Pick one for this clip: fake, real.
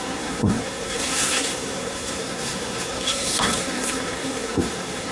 fake